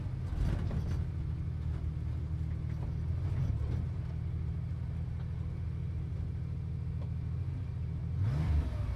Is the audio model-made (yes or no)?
no